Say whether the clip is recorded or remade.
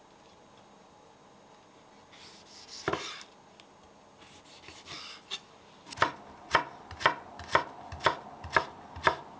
recorded